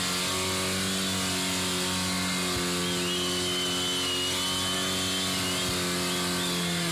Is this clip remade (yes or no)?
no